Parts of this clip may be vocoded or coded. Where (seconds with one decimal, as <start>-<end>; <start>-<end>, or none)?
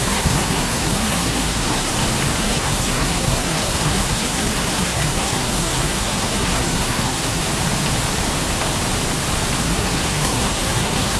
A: 0.0-1.9; 2.4-7.4; 9.6-11.2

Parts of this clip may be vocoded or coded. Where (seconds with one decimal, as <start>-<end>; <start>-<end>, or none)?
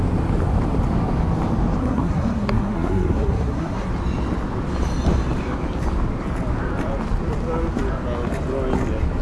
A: 1.8-3.9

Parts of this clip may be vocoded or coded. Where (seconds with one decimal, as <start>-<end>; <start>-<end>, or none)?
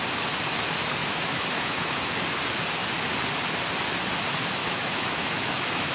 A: 1.0-2.1; 4.6-5.9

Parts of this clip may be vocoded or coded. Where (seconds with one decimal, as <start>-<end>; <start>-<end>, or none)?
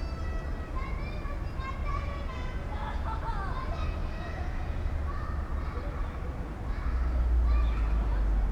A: 1.9-3.4; 4.0-4.9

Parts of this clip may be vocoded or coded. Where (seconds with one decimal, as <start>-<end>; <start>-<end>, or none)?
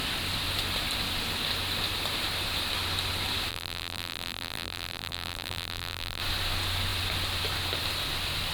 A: 3.5-6.2